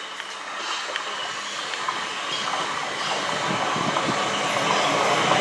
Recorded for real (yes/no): yes